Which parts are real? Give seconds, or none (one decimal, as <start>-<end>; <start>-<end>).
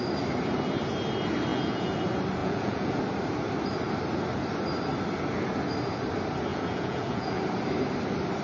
0.0-1.5; 2.0-2.4; 3.0-6.5; 7.4-8.4